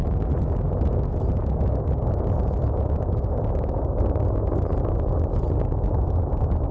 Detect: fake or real real